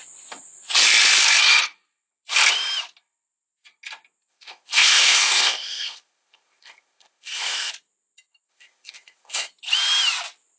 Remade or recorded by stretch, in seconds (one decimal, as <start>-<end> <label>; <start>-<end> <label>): 0.0-4.3 recorded; 4.3-7.7 remade; 7.7-8.5 recorded; 8.5-9.5 remade; 9.5-10.6 recorded